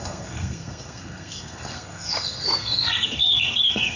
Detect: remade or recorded remade